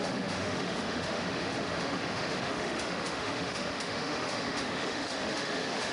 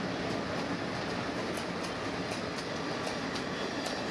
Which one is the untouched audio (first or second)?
second